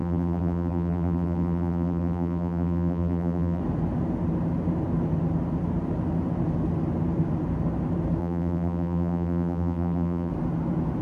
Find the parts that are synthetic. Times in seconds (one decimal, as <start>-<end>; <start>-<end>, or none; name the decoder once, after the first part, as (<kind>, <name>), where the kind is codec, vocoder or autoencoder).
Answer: 0.0-3.6 (vocoder, BigVGAN v2); 8.2-10.3